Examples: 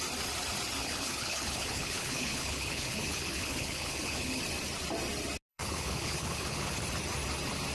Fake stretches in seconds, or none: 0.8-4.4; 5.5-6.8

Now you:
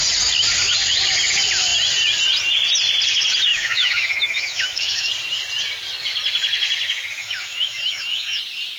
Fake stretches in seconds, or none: 3.5-5.1; 7.2-8.4

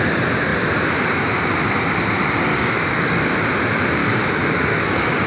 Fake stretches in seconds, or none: 2.5-3.2; 4.0-5.3

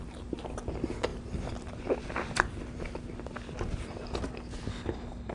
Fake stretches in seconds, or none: 4.7-5.3

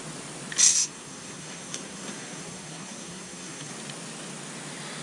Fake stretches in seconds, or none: 0.7-3.7

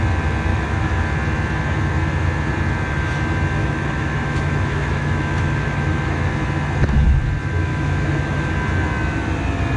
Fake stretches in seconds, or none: 0.5-1.0; 3.6-6.3; 7.7-8.5